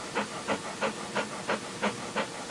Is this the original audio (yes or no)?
yes